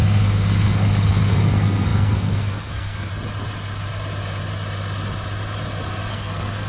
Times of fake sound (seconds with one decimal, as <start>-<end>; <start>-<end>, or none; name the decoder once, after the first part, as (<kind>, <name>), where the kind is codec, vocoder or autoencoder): 0.0-3.1 (codec, SNAC); 6.1-6.7